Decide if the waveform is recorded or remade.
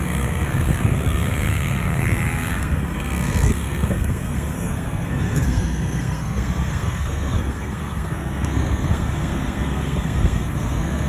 remade